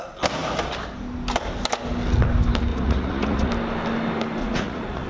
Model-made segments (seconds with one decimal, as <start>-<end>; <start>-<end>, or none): 2.7-3.5; 4.4-5.1